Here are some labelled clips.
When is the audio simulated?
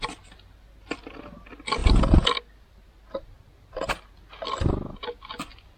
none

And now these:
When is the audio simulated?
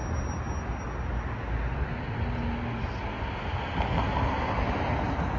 none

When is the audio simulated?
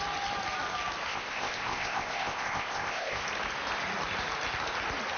1.1-3.2 (codec, ZipCodec)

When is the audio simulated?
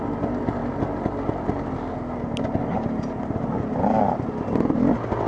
none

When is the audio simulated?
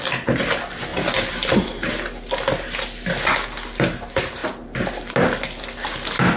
none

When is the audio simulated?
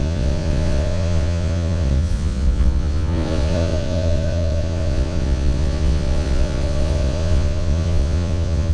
0.0-8.7 (vocoder, Vocos)